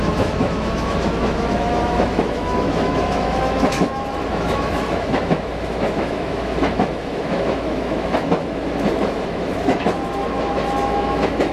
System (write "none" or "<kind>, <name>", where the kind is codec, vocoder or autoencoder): autoencoder, DAC-VAE